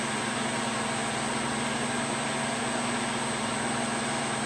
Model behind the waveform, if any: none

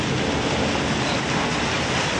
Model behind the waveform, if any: none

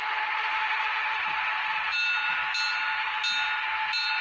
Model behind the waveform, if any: none